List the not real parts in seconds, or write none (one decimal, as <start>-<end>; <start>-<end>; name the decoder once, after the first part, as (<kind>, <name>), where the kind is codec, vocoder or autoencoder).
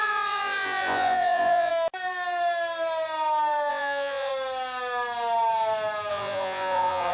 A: 0.0-1.7 (vocoder, Vocos); 3.7-4.3; 6.1-7.1